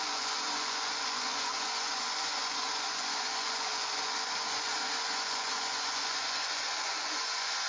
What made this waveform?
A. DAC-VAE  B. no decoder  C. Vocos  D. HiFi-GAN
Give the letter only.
C